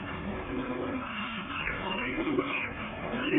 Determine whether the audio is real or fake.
fake